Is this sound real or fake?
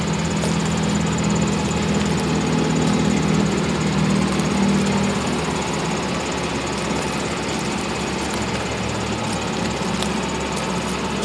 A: real